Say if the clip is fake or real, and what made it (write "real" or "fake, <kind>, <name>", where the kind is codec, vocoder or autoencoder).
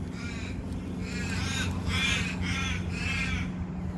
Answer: real